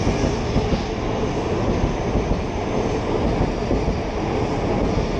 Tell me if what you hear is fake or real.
real